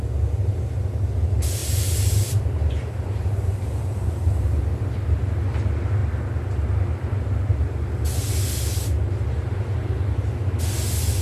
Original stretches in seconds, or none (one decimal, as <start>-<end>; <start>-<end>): 0.0-1.6; 4.6-11.2